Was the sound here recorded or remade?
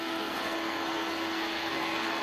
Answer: remade